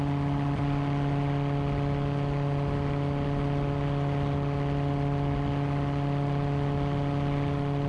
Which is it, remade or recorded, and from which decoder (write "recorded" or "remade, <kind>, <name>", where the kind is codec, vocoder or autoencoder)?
recorded